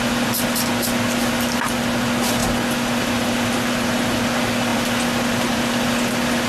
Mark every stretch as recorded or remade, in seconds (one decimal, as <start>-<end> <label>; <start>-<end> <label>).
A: 0.0-6.5 recorded